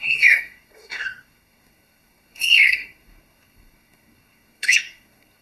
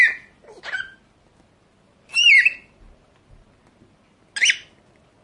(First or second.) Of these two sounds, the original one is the second